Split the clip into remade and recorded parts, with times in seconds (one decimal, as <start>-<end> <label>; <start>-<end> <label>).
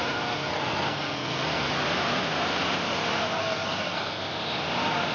0.0-0.5 recorded; 0.5-1.7 remade; 1.7-3.4 recorded; 3.4-4.2 remade; 4.2-5.1 recorded